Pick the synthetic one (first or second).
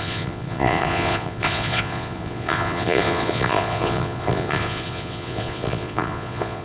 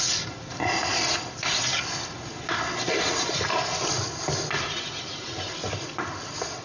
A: first